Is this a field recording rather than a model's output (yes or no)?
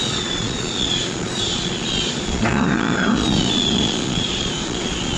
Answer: no